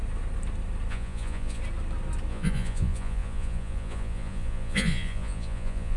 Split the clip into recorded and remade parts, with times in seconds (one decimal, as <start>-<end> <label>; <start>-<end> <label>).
0.0-0.9 recorded; 0.9-1.6 remade; 1.6-2.3 recorded; 2.3-6.0 remade